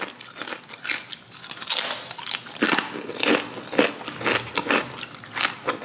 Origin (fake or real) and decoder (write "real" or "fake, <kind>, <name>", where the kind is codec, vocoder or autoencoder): real